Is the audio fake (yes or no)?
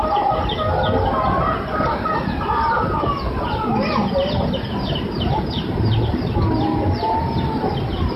no